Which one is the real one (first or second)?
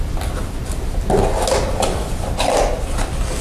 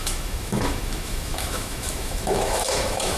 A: first